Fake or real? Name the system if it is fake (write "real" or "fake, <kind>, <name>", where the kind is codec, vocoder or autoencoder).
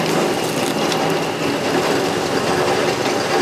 real